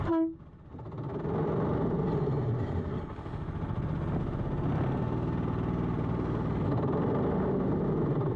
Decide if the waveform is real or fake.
real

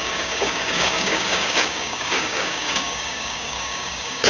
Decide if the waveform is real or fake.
fake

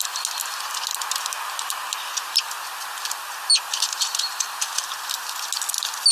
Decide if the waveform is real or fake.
real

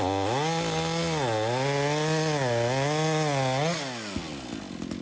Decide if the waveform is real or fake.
real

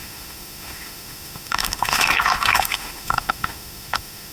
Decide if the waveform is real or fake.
fake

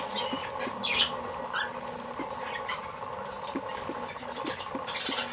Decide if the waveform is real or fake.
real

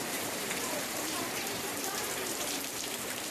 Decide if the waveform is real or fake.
fake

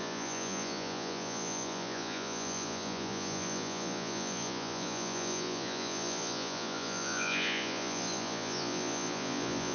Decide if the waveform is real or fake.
fake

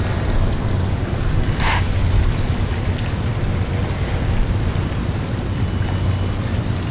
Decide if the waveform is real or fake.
real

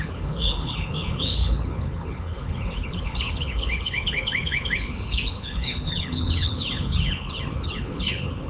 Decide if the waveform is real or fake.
fake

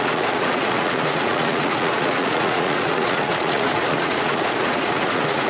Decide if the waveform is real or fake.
fake